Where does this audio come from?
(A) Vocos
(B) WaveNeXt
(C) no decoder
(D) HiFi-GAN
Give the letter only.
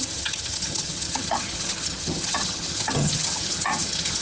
D